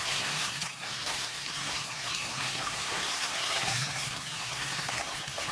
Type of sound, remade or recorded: remade